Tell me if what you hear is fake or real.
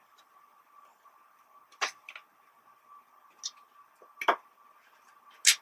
real